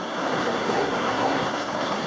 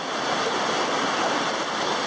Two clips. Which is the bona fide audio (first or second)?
second